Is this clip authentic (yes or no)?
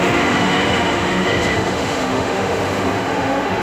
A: no